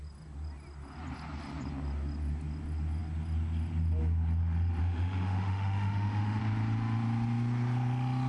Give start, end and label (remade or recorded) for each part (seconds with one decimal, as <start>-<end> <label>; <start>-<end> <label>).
0.0-4.8 recorded; 4.8-6.4 remade; 6.4-8.3 recorded